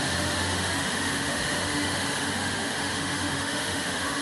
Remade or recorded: remade